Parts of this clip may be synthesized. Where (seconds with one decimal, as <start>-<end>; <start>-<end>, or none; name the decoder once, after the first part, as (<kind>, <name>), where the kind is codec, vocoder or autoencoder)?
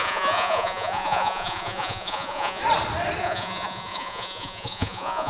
0.0-2.6 (vocoder, Vocos); 3.2-5.3